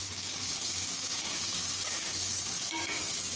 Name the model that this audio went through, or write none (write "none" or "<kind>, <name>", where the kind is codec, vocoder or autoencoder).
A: codec, DAC